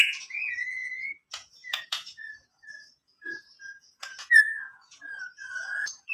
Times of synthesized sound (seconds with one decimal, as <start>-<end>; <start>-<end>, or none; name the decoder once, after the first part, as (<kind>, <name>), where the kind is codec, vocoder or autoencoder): 0.0-6.1 (vocoder, Vocos)